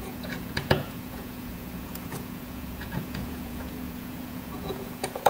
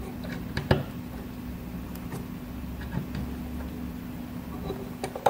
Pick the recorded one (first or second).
second